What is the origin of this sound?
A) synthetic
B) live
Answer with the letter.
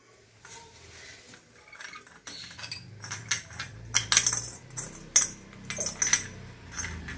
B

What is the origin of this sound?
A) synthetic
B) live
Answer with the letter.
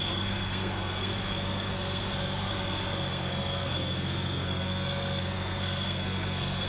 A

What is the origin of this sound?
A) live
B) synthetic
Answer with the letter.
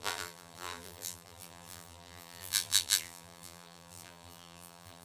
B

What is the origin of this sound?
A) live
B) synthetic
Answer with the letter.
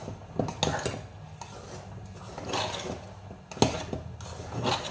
A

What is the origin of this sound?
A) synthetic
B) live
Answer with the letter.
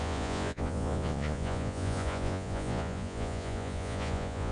A